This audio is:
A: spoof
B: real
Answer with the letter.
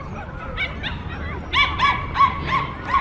B